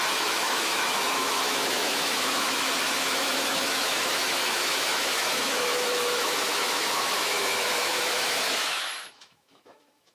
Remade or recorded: remade